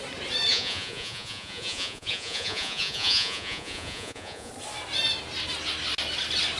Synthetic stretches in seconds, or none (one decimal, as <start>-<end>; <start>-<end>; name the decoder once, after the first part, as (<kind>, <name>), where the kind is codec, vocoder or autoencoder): 0.5-4.5 (vocoder, Vocos)